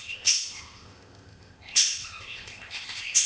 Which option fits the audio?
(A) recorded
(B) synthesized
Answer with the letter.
B